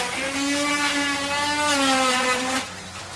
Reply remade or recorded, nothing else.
recorded